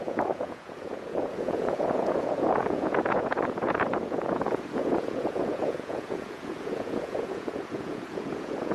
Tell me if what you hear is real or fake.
fake